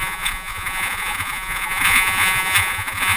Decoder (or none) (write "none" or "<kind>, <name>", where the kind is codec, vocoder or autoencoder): vocoder, Vocos